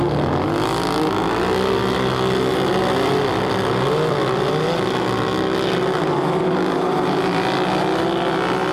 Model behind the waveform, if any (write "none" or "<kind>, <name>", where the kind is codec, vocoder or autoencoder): none